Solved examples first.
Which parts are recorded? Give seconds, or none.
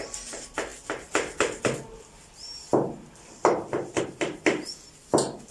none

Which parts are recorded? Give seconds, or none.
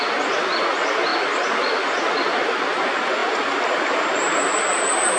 0.0-5.2